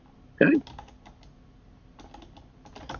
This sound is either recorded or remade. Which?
recorded